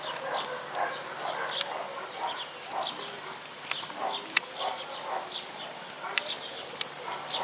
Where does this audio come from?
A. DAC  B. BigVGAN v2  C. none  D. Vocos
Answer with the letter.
C